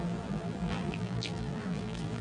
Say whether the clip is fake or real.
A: fake